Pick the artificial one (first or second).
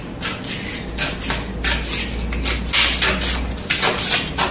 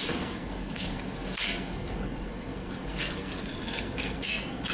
second